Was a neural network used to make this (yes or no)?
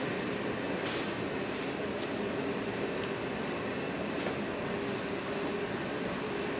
no